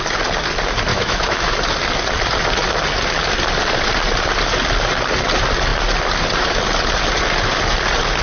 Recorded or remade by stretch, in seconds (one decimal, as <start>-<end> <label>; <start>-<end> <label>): 0.0-0.9 recorded; 0.9-1.5 remade; 1.5-8.2 recorded